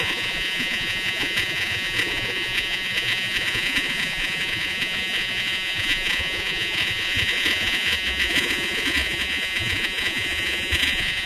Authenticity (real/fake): fake